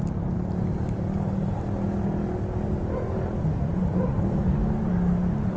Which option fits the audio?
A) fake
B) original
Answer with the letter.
B